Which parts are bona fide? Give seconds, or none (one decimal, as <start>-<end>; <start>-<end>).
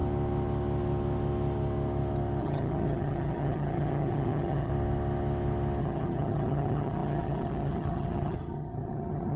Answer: 0.0-2.4; 4.7-5.8